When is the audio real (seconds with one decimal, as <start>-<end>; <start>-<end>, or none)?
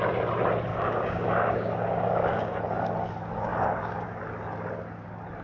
0.0-0.7; 2.6-3.5; 4.2-5.4